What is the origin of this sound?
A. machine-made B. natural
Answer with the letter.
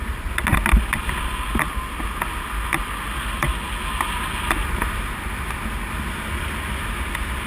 B